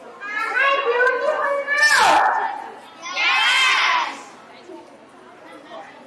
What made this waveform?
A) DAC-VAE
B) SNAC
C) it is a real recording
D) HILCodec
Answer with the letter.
C